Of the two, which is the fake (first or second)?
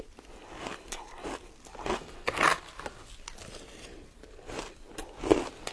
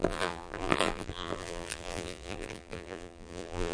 second